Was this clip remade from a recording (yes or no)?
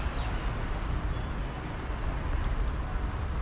no